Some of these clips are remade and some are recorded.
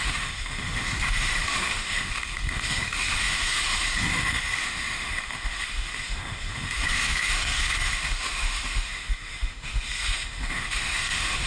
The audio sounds remade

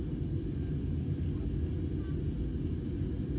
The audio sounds recorded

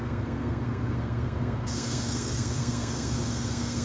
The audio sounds remade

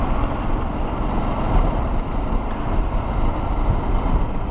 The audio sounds recorded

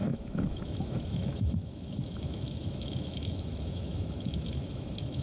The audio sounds remade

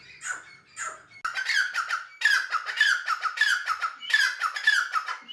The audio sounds recorded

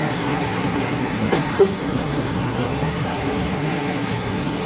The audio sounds remade